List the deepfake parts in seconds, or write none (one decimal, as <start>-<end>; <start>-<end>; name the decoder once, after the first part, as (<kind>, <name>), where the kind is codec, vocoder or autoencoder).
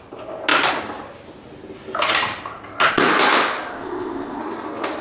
3.7-4.4 (codec, ZipCodec)